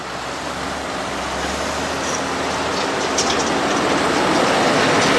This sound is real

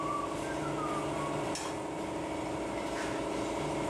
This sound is real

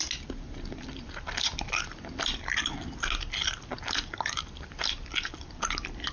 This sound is real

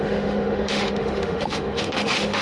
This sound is fake